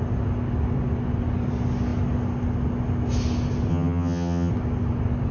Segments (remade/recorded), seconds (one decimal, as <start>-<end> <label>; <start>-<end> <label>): 0.0-3.7 recorded; 3.7-4.5 remade; 4.5-5.3 recorded